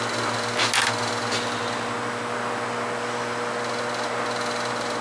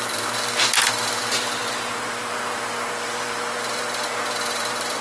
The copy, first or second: second